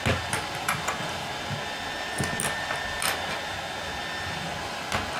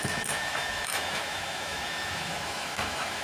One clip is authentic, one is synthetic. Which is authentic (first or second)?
first